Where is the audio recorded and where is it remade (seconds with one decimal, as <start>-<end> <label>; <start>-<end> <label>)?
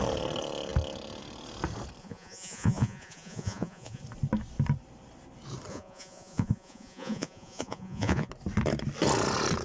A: 0.0-2.0 recorded; 2.0-4.0 remade; 4.0-5.7 recorded; 5.7-8.3 remade; 8.3-9.6 recorded